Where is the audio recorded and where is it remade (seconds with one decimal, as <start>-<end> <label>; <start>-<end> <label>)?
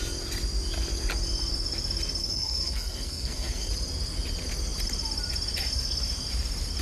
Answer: 0.0-2.2 recorded; 2.2-3.7 remade; 3.7-6.8 recorded